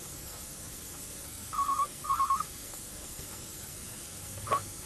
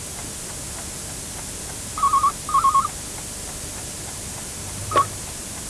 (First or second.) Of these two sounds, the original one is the second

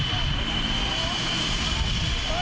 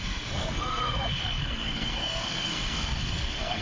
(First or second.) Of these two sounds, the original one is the first